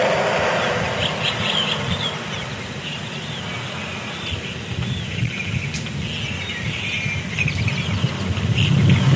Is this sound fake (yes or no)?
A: no